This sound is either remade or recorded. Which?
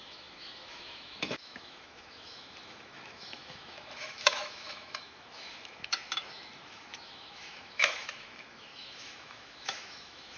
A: remade